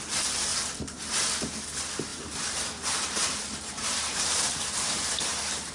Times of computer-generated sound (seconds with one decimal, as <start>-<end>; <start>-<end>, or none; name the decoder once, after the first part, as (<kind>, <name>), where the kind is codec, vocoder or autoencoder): 0.5-1.2 (vocoder, BigVGAN v2); 2.1-5.7

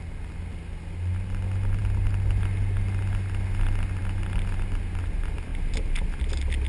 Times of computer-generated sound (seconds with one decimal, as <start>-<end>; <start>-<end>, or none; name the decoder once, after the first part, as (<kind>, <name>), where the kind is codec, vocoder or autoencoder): none

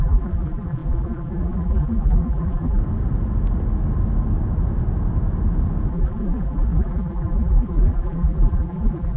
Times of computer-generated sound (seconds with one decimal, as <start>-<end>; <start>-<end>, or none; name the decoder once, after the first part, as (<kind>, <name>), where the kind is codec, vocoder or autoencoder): 0.0-2.8 (vocoder, BigVGAN v2); 5.9-9.2